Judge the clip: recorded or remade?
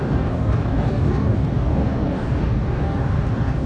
remade